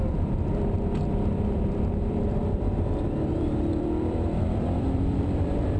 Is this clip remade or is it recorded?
remade